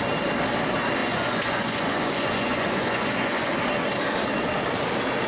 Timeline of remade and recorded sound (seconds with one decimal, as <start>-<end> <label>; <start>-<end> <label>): 0.0-1.0 recorded; 1.0-3.5 remade; 3.5-5.3 recorded